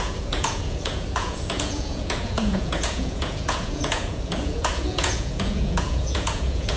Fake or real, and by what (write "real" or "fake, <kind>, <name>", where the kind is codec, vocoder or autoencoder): fake, vocoder, Vocos